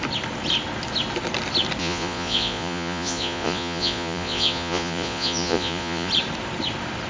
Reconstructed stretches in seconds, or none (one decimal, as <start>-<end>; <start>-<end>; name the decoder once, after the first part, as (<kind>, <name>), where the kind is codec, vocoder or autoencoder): 1.8-6.1 (vocoder, Vocos)